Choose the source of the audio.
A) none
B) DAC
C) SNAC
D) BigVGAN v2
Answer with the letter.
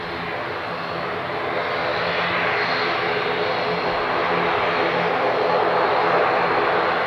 A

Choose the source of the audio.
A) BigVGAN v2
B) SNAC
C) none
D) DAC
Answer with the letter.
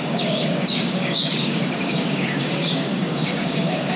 D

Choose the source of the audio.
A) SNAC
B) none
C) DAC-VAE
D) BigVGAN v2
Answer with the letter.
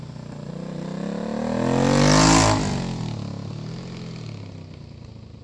B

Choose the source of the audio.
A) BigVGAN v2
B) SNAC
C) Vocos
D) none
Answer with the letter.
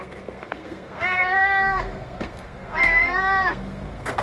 B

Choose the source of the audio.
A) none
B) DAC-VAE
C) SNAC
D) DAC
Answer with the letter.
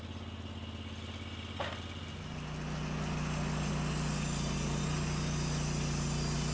A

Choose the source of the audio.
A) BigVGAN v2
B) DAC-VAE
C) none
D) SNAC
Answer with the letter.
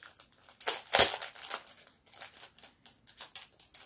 C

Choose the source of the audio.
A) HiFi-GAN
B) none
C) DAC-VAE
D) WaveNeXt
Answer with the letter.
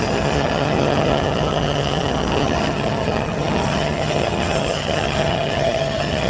A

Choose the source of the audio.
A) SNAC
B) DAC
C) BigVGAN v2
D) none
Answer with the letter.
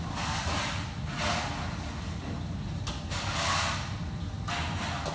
D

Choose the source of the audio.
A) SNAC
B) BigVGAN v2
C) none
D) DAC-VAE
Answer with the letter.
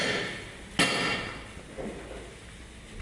C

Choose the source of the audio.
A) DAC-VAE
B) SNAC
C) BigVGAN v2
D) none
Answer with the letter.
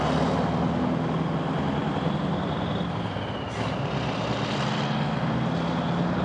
D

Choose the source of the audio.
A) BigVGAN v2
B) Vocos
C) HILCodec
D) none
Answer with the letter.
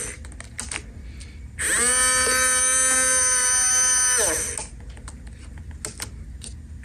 D